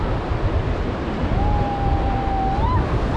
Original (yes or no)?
yes